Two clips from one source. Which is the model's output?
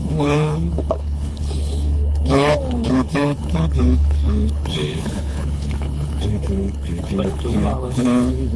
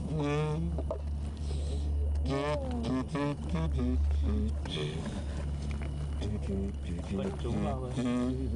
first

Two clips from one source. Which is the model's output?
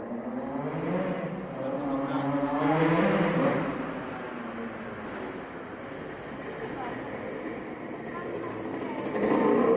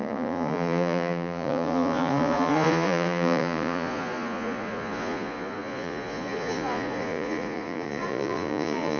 second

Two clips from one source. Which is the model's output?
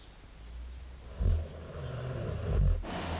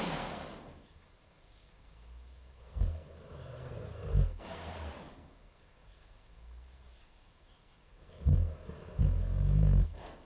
second